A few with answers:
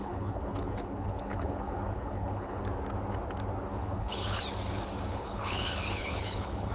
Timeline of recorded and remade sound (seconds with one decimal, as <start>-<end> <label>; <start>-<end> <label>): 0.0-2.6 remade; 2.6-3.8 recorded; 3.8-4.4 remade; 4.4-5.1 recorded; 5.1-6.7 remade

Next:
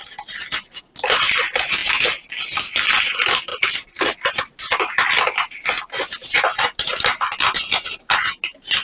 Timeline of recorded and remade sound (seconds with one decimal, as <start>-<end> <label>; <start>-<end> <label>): 0.0-1.4 remade; 1.4-3.5 recorded; 3.5-5.8 remade; 5.8-8.8 recorded

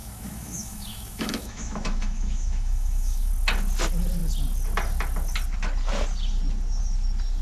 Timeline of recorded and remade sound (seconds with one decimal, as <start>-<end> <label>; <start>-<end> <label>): 0.0-3.3 remade; 3.3-7.4 recorded

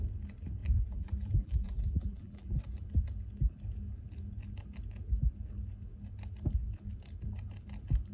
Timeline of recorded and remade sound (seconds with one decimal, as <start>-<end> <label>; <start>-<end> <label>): 0.0-0.6 recorded; 0.6-2.6 remade; 2.6-8.1 recorded

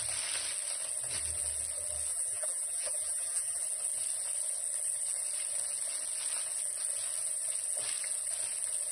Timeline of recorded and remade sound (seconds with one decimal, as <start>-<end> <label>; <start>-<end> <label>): 0.0-2.1 recorded; 2.1-3.6 remade; 3.6-8.9 recorded

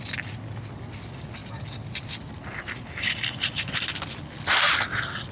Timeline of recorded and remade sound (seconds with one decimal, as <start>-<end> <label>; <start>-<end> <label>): 0.0-5.3 recorded

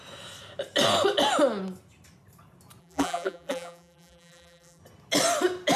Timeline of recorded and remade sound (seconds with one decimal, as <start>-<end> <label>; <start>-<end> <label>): 0.0-2.8 recorded; 2.8-4.8 remade; 4.8-5.8 recorded